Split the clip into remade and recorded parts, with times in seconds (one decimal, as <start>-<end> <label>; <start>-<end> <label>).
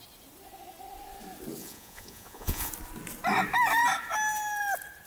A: 0.0-1.6 recorded; 1.6-2.7 remade; 2.7-5.1 recorded